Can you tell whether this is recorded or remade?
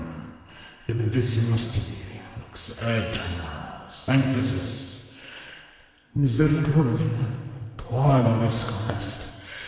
remade